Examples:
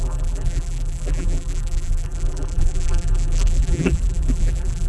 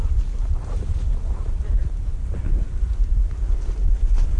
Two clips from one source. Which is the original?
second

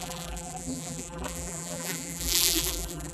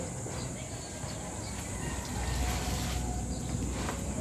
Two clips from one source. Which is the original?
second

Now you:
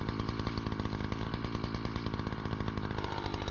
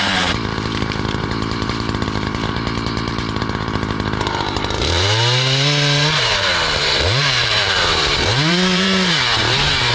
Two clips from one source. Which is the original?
first